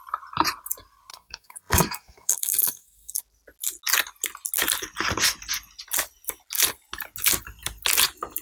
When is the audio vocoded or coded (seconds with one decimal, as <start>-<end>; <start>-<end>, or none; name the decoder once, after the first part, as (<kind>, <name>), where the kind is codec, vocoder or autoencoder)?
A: 1.1-3.2 (codec, SNAC)